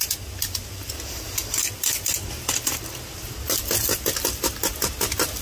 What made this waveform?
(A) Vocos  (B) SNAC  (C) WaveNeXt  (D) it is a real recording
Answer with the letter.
D